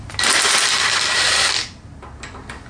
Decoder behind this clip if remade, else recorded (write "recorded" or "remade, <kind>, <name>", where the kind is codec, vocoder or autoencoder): recorded